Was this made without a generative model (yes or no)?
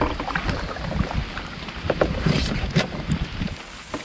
yes